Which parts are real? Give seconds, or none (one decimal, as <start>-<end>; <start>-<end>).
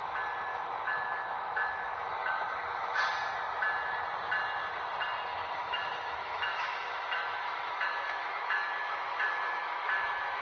0.0-0.5; 3.1-5.3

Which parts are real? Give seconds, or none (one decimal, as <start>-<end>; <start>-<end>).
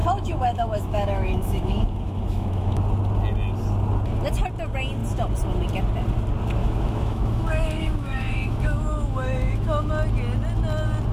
2.8-6.6; 9.9-11.1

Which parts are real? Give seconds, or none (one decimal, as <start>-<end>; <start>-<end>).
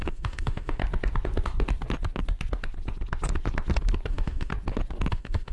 0.8-4.1; 4.5-5.1